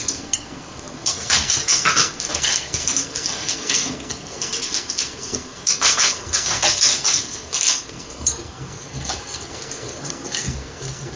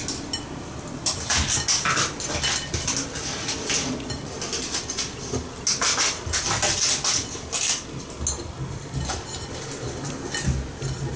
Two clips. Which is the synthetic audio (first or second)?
first